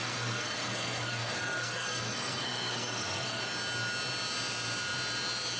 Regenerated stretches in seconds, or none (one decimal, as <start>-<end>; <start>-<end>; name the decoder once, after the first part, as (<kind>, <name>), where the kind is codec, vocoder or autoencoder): 0.0-3.4 (codec, SNAC)